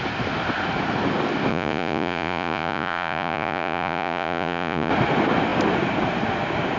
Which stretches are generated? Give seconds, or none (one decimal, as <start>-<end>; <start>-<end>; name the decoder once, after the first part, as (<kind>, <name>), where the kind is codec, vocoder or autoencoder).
1.5-4.9 (vocoder, Vocos)